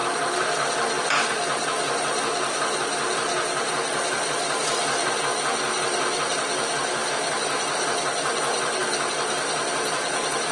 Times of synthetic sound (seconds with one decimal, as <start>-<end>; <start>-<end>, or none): none